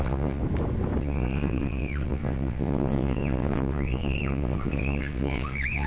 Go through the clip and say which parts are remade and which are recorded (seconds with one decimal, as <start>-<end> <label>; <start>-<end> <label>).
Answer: 0.0-0.4 remade; 0.4-1.0 recorded; 1.0-5.9 remade